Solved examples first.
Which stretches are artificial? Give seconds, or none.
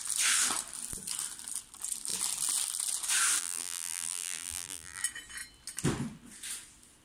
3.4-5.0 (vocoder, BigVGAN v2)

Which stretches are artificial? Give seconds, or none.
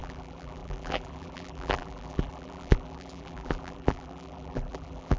0.0-5.2 (vocoder, BigVGAN v2)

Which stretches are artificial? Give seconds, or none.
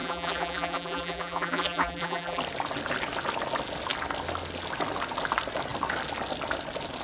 0.0-2.4 (vocoder, BigVGAN v2)